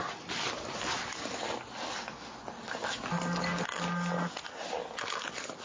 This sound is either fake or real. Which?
real